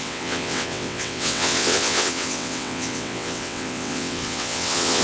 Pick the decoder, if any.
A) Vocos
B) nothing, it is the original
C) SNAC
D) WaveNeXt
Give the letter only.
D